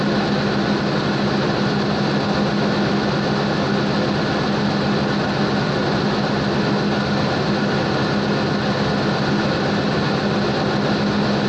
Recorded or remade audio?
recorded